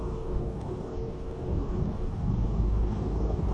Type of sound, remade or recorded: remade